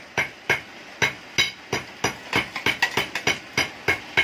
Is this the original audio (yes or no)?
yes